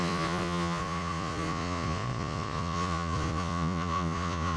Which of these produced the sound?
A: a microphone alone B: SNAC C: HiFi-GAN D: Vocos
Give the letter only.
D